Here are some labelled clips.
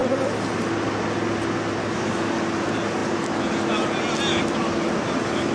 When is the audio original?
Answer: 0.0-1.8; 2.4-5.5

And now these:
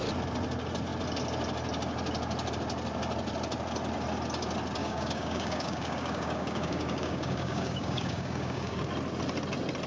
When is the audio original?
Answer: 0.0-4.8; 8.8-9.9

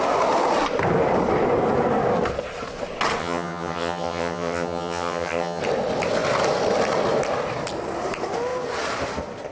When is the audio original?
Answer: 0.0-3.2; 5.6-9.5

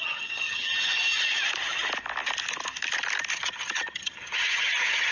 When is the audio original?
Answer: 0.7-3.3

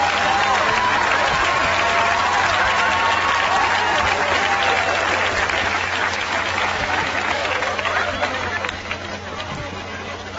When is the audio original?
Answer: 0.0-5.6; 7.6-10.4

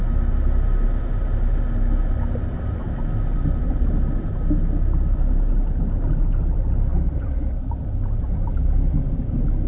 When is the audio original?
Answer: 0.0-9.7

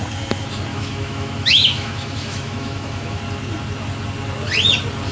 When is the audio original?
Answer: 0.0-0.7; 3.2-5.1

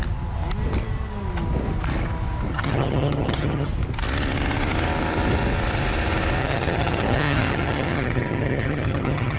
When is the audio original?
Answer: 0.0-2.5; 3.7-6.4